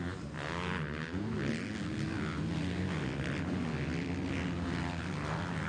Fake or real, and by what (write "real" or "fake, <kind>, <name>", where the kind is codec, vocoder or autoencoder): real